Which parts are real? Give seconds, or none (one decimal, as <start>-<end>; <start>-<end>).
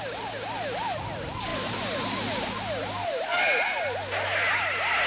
0.0-5.1